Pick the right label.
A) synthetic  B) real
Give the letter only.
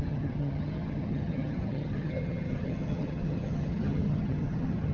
A